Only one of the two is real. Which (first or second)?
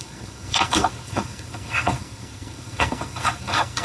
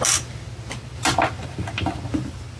second